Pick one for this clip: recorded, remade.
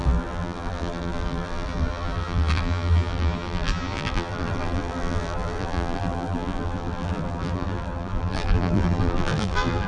remade